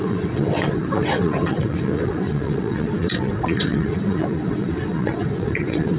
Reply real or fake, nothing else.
fake